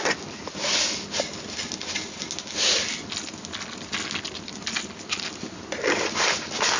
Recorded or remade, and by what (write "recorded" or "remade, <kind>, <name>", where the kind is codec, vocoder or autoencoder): recorded